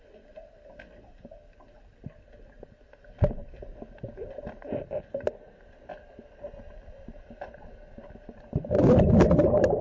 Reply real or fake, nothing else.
real